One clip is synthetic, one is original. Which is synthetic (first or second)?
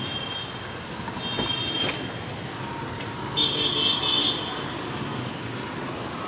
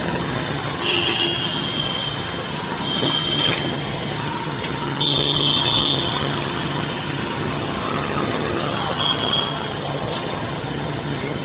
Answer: second